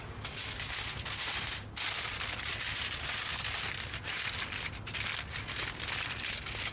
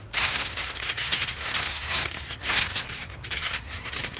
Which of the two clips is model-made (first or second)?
second